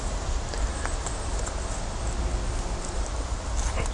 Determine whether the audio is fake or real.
real